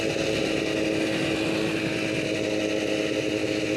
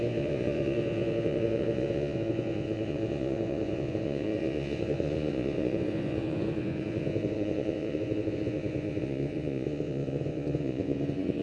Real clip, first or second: first